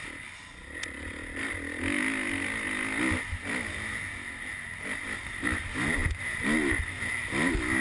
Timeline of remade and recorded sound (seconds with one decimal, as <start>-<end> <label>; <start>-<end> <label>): 0.0-7.8 recorded